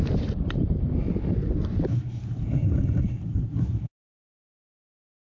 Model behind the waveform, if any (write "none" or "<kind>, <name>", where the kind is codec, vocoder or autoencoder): vocoder, BigVGAN v2